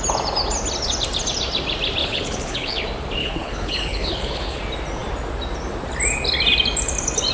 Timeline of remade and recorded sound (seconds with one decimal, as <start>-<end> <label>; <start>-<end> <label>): 0.0-2.0 recorded; 2.0-2.8 remade; 2.8-3.2 recorded; 3.2-4.6 remade; 4.6-7.3 recorded